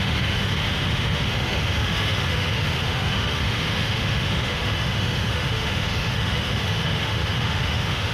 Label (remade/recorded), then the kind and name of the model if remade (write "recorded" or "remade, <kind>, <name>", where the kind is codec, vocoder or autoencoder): remade, autoencoder, DAC-VAE